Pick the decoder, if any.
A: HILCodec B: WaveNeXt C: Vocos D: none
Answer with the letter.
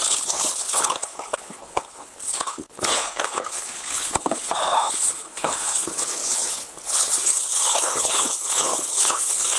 A